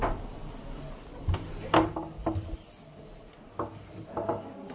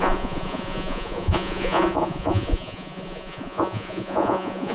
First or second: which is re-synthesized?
second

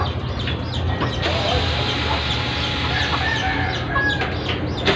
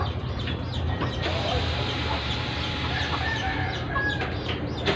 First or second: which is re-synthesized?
second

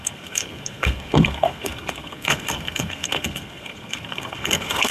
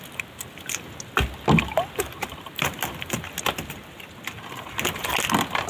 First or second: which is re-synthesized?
first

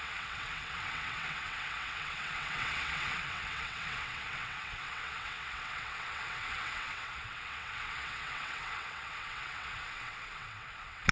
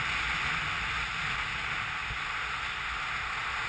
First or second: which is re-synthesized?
first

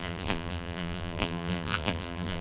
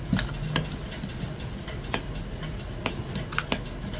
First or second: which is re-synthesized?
first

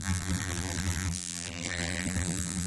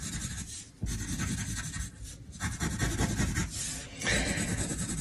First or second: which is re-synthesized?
first